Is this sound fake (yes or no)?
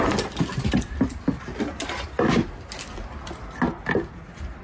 no